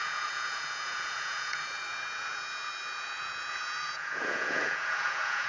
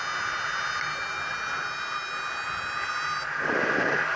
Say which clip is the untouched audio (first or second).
second